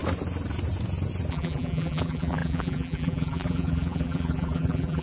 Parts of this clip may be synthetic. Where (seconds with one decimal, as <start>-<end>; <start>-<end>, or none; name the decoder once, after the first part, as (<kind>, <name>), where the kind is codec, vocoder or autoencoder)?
1.3-5.0 (vocoder, BigVGAN v2)